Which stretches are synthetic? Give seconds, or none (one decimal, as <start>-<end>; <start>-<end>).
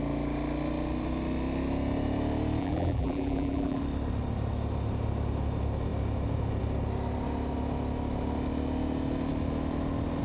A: 2.6-3.8